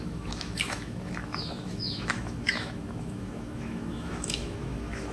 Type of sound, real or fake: fake